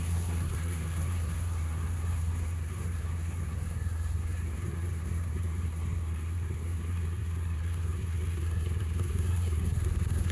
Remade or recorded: remade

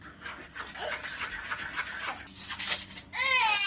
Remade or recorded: recorded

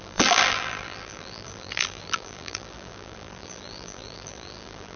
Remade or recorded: remade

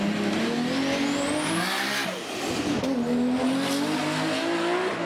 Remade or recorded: recorded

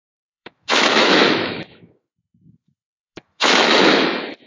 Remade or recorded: remade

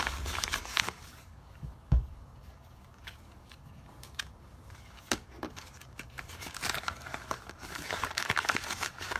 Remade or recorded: remade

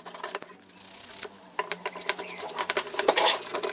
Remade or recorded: recorded